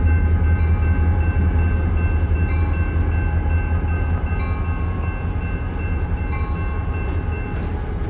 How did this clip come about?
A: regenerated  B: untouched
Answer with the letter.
B